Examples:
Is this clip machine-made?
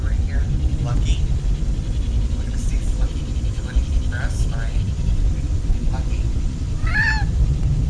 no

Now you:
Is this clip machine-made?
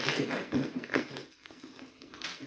yes